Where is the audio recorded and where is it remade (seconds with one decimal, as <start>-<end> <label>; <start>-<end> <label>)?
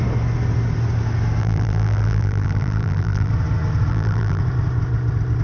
0.0-1.4 recorded; 1.4-3.3 remade; 3.3-3.9 recorded; 3.9-4.4 remade; 4.4-5.4 recorded